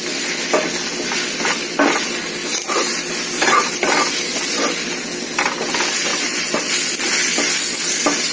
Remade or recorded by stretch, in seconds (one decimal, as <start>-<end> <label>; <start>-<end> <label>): 0.0-8.3 recorded